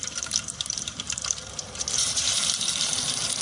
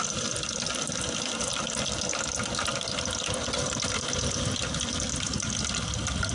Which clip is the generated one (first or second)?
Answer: first